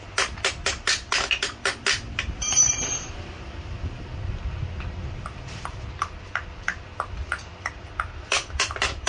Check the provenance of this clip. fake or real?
fake